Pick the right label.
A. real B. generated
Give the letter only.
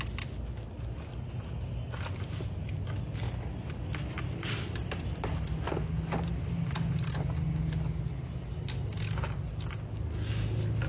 A